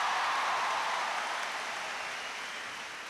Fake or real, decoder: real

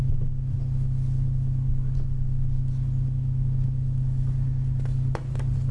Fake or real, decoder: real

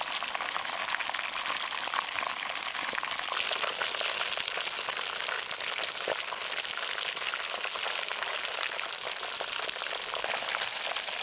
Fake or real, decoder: real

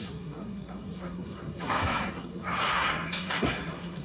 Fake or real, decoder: fake, codec, SNAC